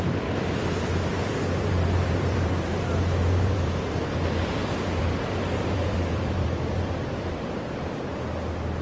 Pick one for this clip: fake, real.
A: fake